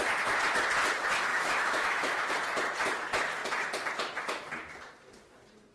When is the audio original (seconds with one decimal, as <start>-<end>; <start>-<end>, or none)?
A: 0.0-1.3; 2.3-5.7